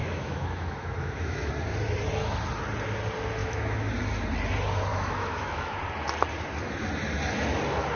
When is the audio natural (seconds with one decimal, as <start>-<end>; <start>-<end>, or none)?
1.5-3.4; 3.9-4.9; 5.8-8.0